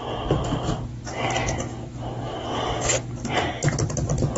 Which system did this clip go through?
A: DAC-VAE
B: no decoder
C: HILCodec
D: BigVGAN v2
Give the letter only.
B